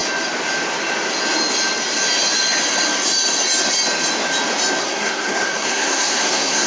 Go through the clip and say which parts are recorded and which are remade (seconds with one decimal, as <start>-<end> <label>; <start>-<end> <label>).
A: 0.0-4.8 recorded; 4.8-6.7 remade